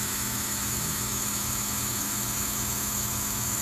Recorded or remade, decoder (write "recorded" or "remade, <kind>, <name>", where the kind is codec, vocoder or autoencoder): remade, autoencoder, DAC-VAE